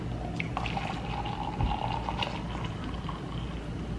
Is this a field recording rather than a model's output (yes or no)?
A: yes